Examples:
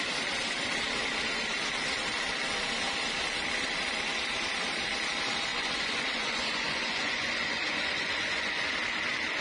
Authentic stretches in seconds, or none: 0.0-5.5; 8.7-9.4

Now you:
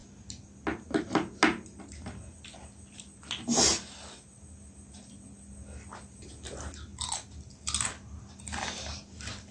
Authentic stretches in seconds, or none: 0.0-9.5

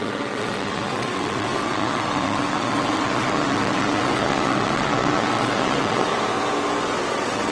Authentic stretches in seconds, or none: 6.1-7.1

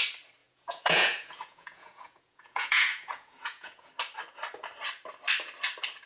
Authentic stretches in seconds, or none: 0.0-0.4; 3.9-6.1

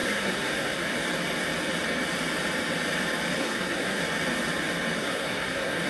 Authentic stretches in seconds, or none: 0.9-3.4; 4.0-5.0